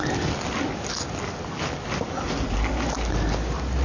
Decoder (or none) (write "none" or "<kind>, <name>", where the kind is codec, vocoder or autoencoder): none